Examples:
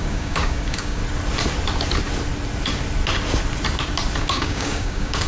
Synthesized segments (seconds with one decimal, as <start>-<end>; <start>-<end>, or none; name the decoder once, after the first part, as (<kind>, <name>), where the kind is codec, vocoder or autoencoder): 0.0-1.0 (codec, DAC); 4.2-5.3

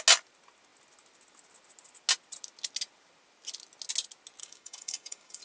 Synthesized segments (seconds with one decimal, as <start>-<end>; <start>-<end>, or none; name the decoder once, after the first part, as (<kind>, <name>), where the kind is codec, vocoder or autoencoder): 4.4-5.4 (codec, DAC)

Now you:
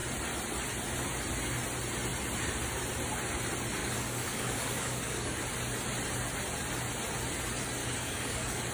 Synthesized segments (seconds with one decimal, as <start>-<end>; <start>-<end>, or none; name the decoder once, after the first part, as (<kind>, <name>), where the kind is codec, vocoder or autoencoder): 3.8-5.4 (codec, DAC); 7.8-8.7

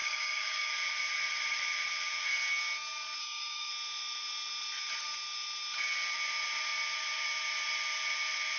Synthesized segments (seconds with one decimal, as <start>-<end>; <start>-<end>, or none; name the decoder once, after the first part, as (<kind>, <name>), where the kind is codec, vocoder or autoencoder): 0.0-0.7 (codec, DAC); 3.2-3.7

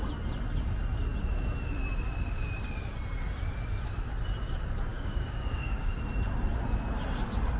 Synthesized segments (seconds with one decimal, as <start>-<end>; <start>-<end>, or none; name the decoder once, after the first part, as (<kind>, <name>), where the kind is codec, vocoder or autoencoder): 4.9-6.0 (codec, DAC)

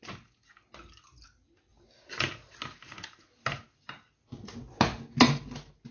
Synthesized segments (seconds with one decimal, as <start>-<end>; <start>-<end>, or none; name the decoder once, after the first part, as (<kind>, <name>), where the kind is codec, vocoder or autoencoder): none

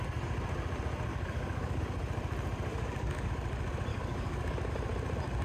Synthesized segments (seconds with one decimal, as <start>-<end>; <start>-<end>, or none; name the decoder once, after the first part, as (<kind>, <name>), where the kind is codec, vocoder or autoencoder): 1.1-1.8 (codec, DAC); 2.7-3.3; 3.9-4.7

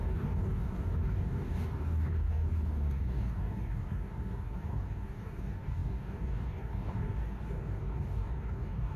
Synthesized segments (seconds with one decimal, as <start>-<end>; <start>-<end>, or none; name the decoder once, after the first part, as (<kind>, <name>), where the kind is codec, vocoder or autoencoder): 0.0-9.0 (codec, DAC)